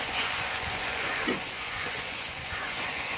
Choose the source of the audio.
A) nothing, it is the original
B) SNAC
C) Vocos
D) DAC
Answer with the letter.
C